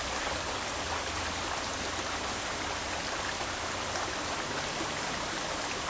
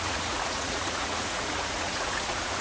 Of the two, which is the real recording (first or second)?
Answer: first